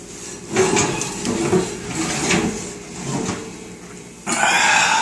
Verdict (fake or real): real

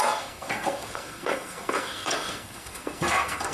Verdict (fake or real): fake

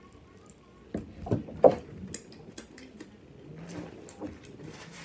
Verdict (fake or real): real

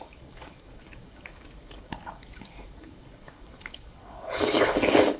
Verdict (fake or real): fake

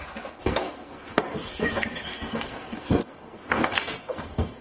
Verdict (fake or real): fake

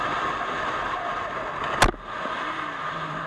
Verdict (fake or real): real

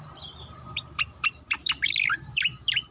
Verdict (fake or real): fake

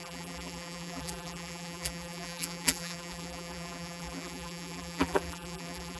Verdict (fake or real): fake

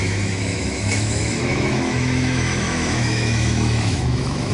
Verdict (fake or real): fake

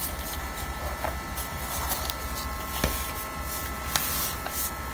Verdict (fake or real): real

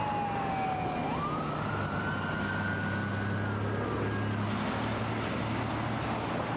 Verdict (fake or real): real